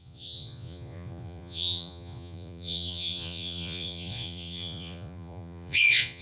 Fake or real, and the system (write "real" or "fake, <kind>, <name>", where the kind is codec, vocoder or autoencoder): fake, vocoder, Vocos